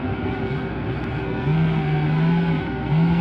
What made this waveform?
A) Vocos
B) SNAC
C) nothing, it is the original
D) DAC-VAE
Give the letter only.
B